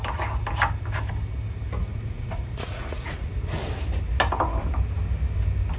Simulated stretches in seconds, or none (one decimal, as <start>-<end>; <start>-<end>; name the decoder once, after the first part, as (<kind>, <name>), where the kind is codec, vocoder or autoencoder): 1.8-3.3 (vocoder, Vocos)